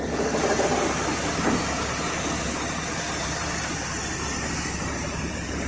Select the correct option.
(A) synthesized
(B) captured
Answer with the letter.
B